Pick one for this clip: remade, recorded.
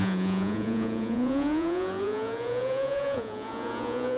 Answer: remade